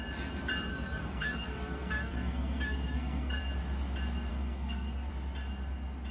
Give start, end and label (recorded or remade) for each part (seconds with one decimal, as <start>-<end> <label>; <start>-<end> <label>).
0.0-0.7 recorded; 0.7-3.4 remade; 3.4-4.3 recorded; 4.3-5.1 remade; 5.1-6.1 recorded